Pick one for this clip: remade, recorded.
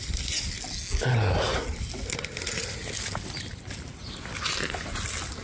recorded